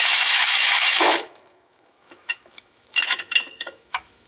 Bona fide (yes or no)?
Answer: no